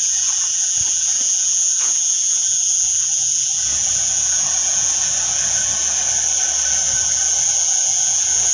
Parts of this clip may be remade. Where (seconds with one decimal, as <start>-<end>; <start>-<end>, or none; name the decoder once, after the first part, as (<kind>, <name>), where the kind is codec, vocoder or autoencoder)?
0.0-6.0 (vocoder, Vocos); 6.7-7.2; 7.8-8.5